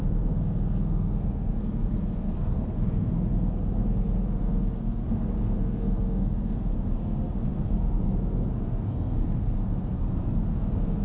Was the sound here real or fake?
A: fake